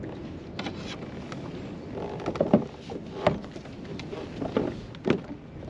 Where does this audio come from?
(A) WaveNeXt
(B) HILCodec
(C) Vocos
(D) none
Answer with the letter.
D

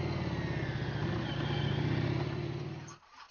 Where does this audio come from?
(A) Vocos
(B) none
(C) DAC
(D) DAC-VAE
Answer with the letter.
B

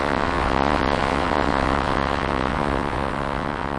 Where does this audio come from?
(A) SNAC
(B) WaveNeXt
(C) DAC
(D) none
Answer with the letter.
B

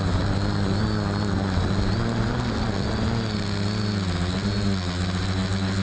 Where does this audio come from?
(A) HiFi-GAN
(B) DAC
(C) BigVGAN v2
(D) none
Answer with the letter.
D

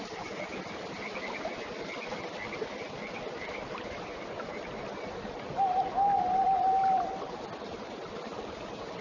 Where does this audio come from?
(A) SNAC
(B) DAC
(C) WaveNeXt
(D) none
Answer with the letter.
D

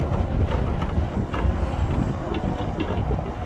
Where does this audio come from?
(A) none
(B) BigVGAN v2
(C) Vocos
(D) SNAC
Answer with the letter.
A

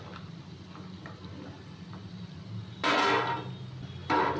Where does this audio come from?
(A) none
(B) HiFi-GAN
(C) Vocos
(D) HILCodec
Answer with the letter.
A